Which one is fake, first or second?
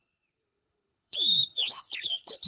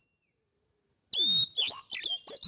first